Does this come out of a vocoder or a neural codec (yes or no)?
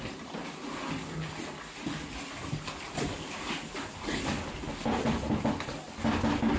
no